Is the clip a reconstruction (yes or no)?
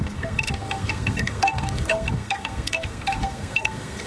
yes